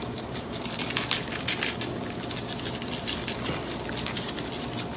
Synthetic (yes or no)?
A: yes